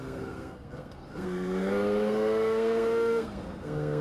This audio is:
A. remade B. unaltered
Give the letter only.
A